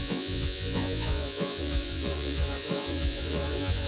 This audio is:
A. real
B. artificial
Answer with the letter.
B